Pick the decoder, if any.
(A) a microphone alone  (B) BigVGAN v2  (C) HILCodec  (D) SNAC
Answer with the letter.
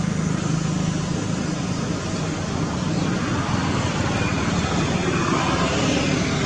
A